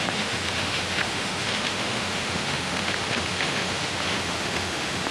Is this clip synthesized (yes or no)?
yes